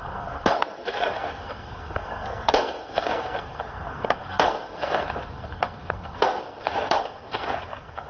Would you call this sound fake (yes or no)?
yes